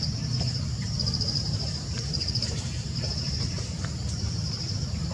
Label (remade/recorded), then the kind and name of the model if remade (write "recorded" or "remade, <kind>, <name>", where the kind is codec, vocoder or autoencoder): remade, vocoder, BigVGAN v2